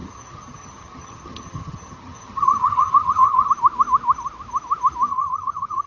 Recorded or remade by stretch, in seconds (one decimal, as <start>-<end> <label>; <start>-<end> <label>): 0.0-3.5 remade; 3.5-5.1 recorded; 5.1-5.9 remade